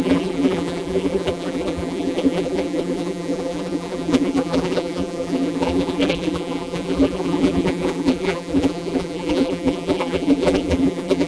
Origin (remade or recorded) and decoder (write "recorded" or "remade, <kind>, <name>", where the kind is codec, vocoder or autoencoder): remade, vocoder, BigVGAN v2